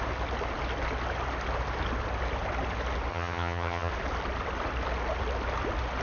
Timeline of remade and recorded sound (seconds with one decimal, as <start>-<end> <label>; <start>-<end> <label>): 0.0-3.1 recorded; 3.1-3.9 remade; 3.9-6.0 recorded